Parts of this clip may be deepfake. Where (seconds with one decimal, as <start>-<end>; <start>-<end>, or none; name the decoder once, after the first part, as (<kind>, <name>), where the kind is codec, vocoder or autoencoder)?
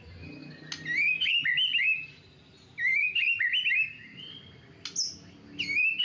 none